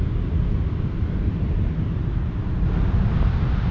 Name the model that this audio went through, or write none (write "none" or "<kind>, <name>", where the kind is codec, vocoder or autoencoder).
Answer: none